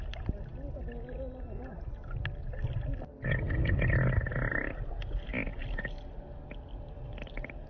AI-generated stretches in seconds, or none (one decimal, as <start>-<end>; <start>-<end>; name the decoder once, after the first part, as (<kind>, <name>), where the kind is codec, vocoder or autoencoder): none